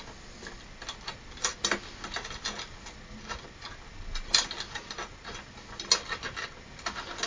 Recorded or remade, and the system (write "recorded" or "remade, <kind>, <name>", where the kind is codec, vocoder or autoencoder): recorded